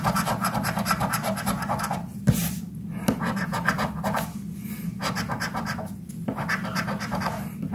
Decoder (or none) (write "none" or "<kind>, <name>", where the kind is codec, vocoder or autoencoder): none